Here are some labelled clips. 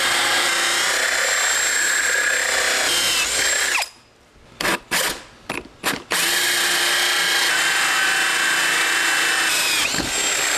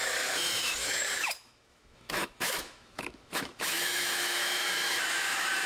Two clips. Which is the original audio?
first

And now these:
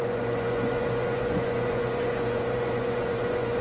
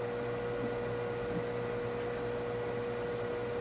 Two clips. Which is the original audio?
second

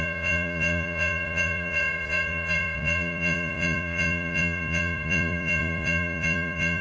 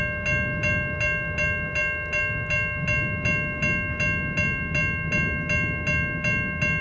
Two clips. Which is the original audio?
second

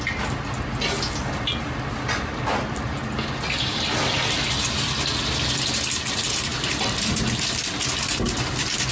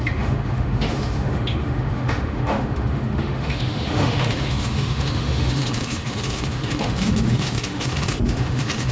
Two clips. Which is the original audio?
first